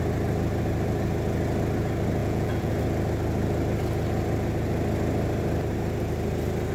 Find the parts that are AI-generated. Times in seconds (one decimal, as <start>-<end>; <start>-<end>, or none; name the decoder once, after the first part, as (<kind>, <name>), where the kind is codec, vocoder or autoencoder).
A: 2.2-2.7 (vocoder, Vocos)